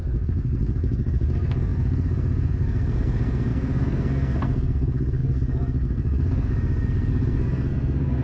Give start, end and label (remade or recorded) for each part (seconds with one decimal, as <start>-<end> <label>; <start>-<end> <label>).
0.0-8.2 remade